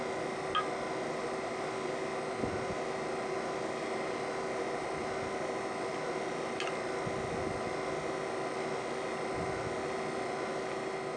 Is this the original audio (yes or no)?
yes